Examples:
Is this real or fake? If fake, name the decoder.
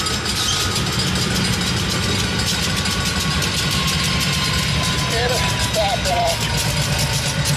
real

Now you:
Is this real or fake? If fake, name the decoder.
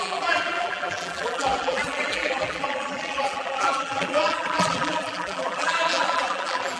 fake, vocoder, BigVGAN v2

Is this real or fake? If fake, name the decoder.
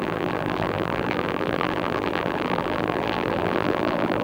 fake, vocoder, BigVGAN v2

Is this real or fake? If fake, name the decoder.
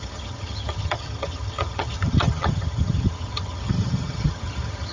fake, vocoder, HiFi-GAN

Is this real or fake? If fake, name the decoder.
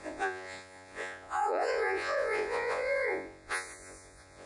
fake, vocoder, Vocos